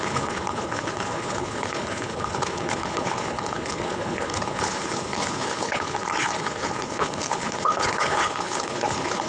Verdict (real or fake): fake